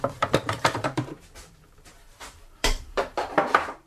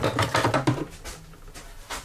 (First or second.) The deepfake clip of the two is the first